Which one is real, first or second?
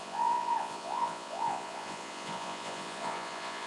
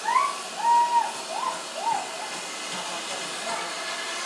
second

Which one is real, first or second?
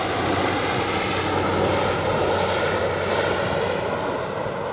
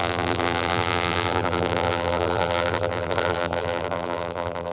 first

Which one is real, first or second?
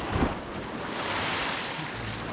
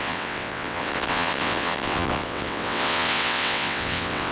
first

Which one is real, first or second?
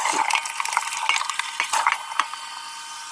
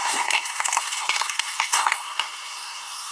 first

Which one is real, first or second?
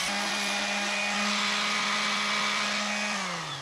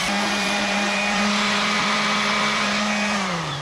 first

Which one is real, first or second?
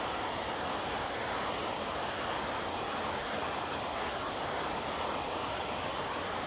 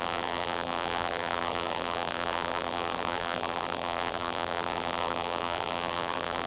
first